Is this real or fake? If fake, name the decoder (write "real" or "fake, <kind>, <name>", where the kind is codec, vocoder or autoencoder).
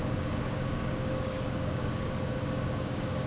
fake, codec, DAC